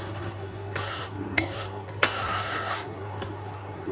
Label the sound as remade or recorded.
remade